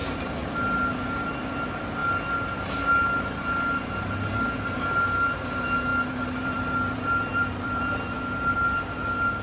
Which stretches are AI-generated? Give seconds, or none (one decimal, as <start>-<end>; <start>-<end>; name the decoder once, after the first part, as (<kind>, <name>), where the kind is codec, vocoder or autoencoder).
0.0-0.5 (vocoder, BigVGAN v2); 5.9-8.2